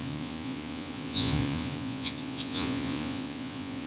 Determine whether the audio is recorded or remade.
remade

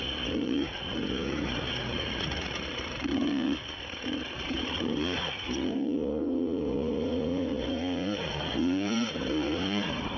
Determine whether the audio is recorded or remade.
remade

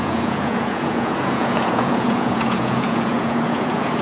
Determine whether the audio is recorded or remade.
remade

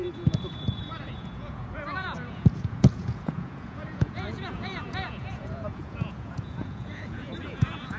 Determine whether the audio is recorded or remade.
remade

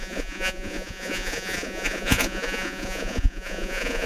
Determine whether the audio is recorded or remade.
remade